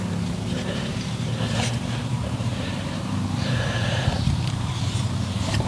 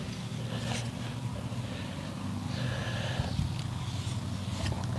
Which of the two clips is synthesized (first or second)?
first